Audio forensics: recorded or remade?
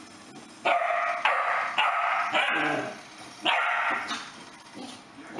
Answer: recorded